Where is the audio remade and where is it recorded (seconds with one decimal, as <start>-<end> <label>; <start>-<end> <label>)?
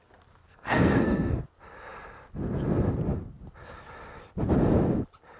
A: 0.0-0.4 recorded; 0.4-1.4 remade; 1.4-5.4 recorded